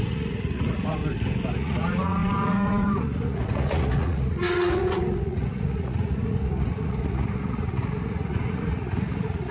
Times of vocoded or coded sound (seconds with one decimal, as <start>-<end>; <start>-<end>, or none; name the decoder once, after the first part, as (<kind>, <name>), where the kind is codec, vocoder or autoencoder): 0.0-1.0 (vocoder, Vocos); 1.5-9.5